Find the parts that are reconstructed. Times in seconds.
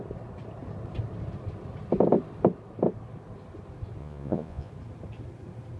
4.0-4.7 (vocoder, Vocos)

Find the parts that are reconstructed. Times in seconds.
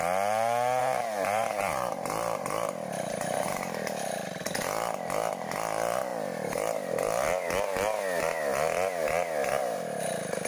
0.8-3.5 (vocoder, BigVGAN v2)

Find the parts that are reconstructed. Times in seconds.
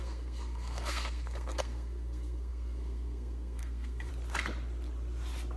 0.0-4.1 (codec, SNAC)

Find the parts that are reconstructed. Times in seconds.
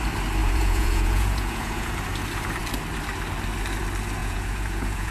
0.4-1.9 (vocoder, Vocos); 4.2-5.1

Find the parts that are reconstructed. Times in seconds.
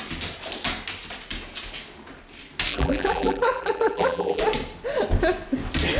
2.7-4.4 (vocoder, BigVGAN v2)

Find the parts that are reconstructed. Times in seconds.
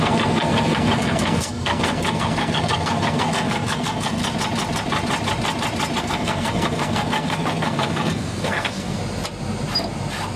0.0-4.2 (codec, SNAC); 6.0-9.0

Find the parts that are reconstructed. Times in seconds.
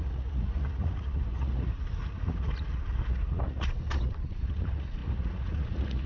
0.0-6.1 (vocoder, Vocos)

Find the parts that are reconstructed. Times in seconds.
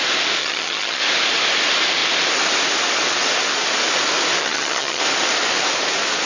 0.4-1.0 (vocoder, HiFi-GAN); 4.4-5.0